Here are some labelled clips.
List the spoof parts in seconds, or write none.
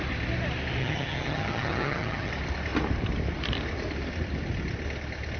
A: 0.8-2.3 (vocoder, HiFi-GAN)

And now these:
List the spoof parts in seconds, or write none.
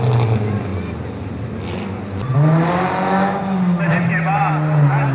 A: none